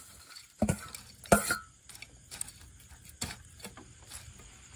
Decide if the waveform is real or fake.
real